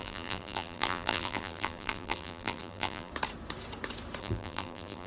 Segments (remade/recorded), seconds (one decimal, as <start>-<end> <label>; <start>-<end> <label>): 0.0-3.1 remade; 3.1-4.2 recorded; 4.2-5.1 remade